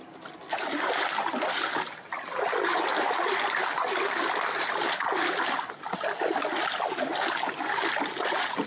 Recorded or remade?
recorded